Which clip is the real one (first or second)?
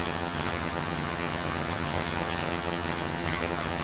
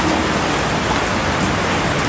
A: second